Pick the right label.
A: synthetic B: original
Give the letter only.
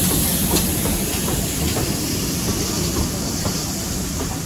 A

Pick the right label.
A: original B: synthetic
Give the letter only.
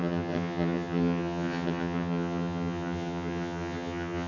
B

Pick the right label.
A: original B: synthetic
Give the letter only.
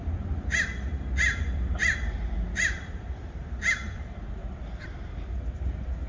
B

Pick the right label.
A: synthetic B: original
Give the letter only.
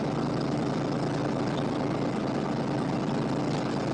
B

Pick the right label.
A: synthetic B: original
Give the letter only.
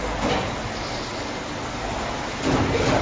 B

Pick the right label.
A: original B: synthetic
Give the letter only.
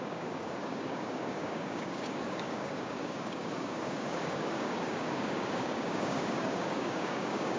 B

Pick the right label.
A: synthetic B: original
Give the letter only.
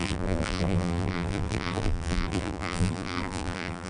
A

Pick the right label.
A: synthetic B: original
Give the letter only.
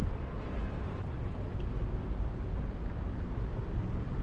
B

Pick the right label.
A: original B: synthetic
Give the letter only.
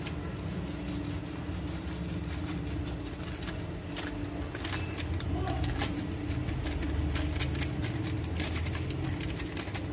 A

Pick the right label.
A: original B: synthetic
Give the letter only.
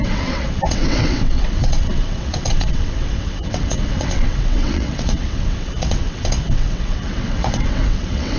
B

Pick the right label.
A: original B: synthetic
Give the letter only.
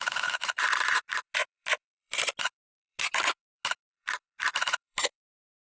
B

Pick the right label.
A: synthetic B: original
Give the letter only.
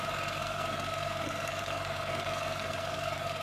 A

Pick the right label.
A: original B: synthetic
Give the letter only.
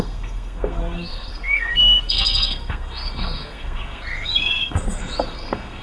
B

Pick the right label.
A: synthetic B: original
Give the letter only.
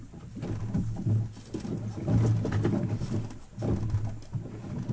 B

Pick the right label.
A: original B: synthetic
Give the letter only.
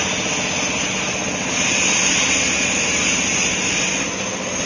A